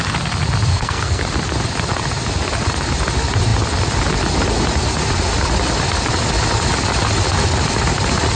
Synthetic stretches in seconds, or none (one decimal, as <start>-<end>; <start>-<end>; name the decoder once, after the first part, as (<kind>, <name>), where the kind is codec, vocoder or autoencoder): 0.7-1.2 (codec, SNAC)